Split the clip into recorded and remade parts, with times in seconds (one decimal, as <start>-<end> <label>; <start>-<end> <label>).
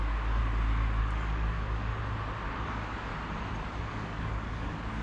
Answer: 0.0-0.4 remade; 0.4-1.0 recorded; 1.0-1.9 remade; 1.9-2.6 recorded; 2.6-3.1 remade; 3.1-3.8 recorded; 3.8-5.0 remade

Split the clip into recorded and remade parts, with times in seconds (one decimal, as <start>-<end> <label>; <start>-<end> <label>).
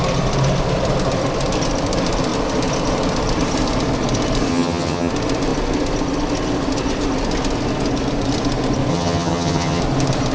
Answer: 0.0-4.5 recorded; 4.5-5.1 remade; 5.1-8.9 recorded; 8.9-9.8 remade; 9.8-10.3 recorded